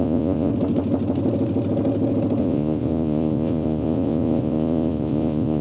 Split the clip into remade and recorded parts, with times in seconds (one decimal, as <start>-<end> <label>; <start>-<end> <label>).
0.0-0.5 remade; 0.5-2.4 recorded; 2.4-5.6 remade